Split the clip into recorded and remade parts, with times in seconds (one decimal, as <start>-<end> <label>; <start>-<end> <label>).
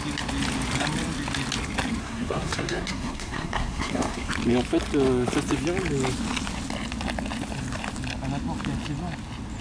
0.0-2.0 recorded; 2.0-4.3 remade; 4.3-9.6 recorded